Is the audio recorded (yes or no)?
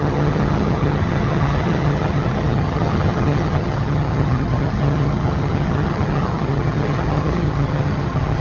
no